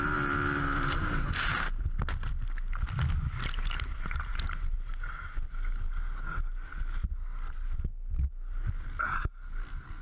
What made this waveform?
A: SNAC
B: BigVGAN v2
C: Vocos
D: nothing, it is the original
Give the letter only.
D